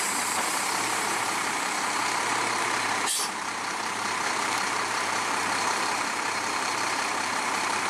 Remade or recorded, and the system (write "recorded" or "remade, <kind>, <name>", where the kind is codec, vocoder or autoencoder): remade, vocoder, BigVGAN v2